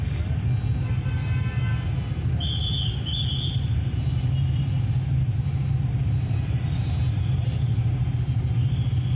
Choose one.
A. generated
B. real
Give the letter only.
B